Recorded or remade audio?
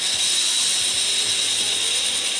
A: recorded